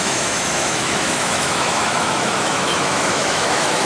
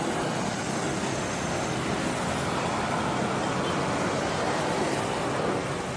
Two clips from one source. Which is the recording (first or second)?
second